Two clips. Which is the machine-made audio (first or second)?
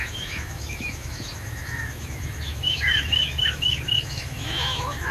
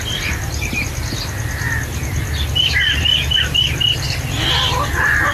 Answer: first